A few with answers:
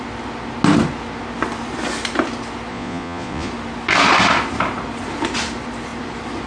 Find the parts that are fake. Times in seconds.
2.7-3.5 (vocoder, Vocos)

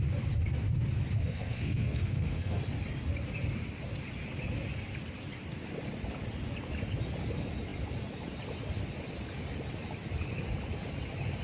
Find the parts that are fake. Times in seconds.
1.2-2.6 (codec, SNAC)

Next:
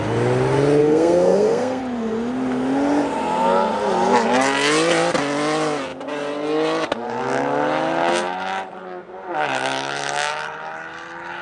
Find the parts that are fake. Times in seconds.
0.8-1.8 (codec, SNAC)

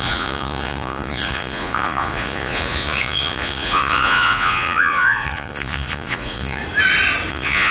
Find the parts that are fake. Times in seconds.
0.0-6.6 (vocoder, Vocos); 7.3-7.7